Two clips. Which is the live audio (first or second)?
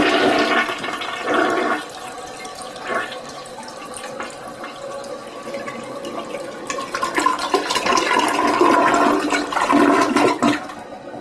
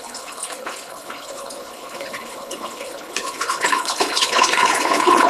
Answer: first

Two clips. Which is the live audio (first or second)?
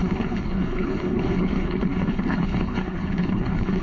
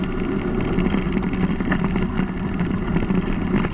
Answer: second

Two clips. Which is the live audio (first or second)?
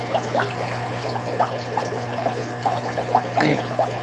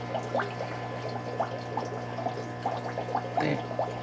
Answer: second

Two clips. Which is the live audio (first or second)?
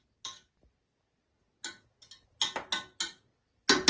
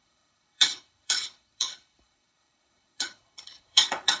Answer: first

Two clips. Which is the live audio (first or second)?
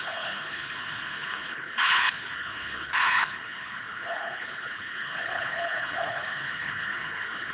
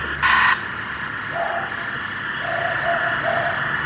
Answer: second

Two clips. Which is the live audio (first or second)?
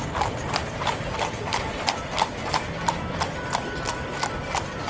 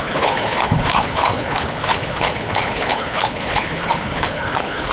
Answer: first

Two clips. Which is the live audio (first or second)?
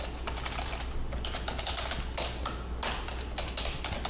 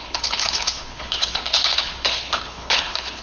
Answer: first